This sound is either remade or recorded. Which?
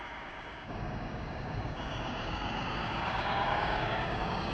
remade